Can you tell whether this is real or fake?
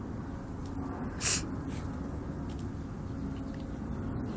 real